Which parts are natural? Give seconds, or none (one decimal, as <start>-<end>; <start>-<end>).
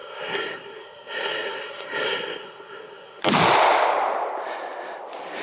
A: 3.2-5.4